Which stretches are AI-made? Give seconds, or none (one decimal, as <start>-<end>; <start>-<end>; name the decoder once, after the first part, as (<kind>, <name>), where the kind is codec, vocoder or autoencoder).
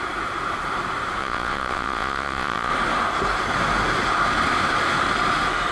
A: 1.2-2.7 (vocoder, Vocos)